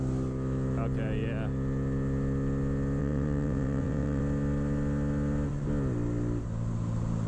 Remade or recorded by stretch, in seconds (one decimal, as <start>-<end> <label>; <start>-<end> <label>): 0.0-3.0 recorded; 3.0-4.2 remade; 4.2-7.3 recorded